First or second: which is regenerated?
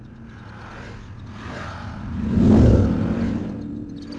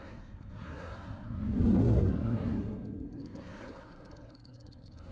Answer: second